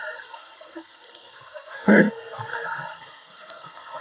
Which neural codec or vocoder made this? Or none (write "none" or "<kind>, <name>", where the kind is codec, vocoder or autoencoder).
codec, SNAC